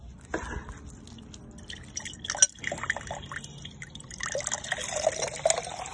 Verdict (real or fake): real